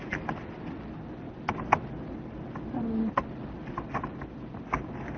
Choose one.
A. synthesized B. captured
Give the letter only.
B